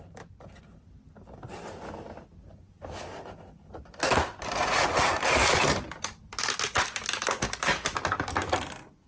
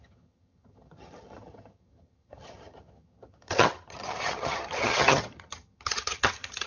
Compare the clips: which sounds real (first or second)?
first